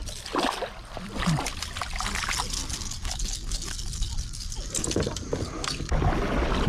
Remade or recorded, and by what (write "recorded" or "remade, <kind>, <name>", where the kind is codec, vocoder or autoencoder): recorded